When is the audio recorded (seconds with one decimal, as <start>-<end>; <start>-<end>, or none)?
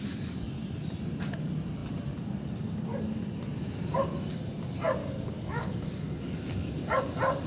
0.0-5.0; 6.4-7.5